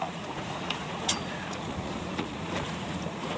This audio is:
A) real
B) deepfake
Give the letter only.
B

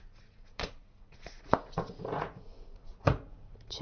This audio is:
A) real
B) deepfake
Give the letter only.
B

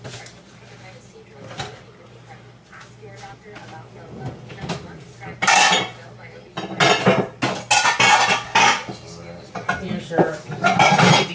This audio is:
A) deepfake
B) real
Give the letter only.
B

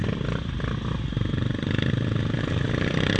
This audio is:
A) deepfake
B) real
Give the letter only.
A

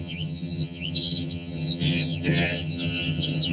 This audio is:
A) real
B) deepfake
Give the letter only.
B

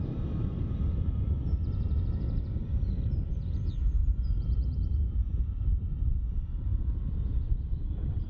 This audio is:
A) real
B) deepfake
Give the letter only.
B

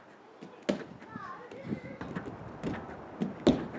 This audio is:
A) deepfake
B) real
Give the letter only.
B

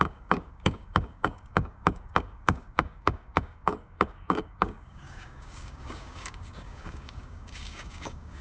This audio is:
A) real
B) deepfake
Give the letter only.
B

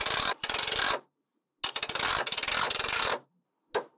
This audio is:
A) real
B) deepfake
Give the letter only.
A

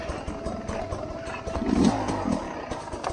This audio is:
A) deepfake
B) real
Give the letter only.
B